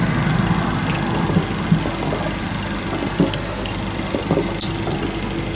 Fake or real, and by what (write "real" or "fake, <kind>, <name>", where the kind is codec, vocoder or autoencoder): real